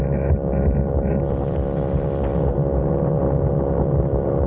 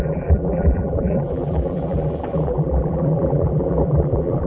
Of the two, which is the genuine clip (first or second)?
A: first